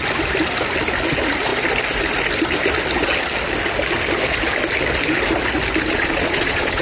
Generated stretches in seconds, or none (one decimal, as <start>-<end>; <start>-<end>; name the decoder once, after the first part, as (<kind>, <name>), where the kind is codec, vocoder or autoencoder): 5.9-6.8 (vocoder, Vocos)